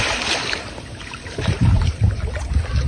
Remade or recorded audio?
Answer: remade